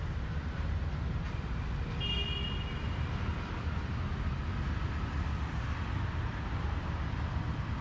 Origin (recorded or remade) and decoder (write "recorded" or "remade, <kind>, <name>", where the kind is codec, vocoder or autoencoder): recorded